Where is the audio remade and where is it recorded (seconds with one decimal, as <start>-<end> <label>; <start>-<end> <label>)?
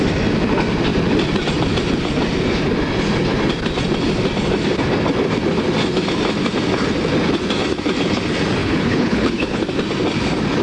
0.0-8.6 recorded; 8.6-9.6 remade; 9.6-10.6 recorded